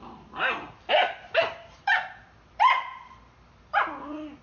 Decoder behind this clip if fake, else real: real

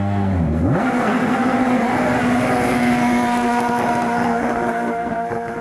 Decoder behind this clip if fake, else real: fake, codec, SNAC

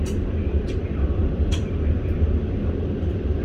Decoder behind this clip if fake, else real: fake, vocoder, BigVGAN v2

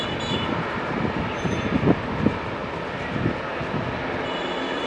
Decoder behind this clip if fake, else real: real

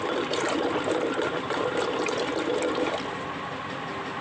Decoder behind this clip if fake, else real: real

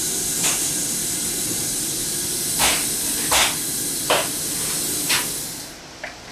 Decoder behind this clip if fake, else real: real